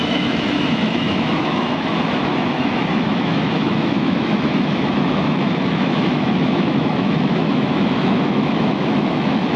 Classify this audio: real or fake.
fake